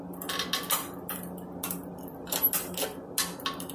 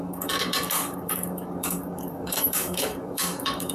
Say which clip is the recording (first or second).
first